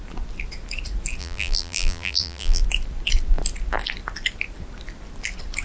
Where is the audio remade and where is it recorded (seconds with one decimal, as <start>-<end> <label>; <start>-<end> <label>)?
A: 0.0-1.2 recorded; 1.2-2.6 remade; 2.6-5.6 recorded